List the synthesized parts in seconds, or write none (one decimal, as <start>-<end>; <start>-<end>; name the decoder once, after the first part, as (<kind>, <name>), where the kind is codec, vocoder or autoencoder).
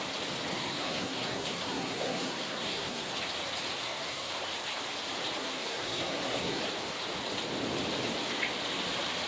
0.5-3.1 (codec, SNAC); 3.8-4.3; 5.4-6.6